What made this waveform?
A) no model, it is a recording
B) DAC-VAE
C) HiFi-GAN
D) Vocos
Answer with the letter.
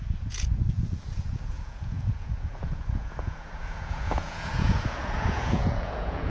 D